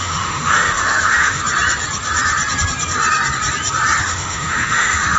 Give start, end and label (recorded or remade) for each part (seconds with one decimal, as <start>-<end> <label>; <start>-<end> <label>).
0.0-1.4 remade; 1.4-4.0 recorded; 4.0-5.2 remade